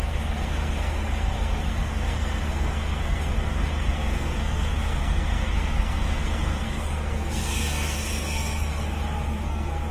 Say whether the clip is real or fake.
fake